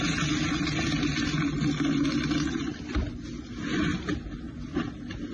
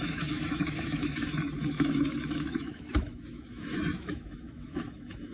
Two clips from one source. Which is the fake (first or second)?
second